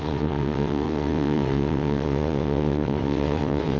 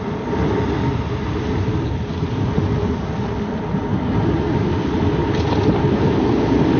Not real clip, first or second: first